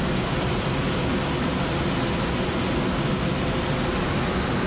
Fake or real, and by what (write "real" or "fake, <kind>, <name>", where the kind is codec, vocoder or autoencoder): real